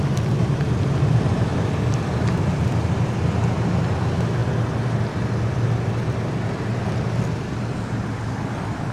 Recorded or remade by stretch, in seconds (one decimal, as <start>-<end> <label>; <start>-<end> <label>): 0.0-8.9 recorded